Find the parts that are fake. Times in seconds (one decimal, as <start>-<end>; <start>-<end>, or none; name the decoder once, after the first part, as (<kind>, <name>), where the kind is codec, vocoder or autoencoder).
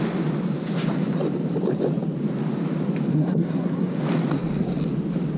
3.1-3.9 (codec, SNAC)